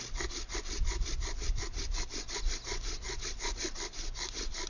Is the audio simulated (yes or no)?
no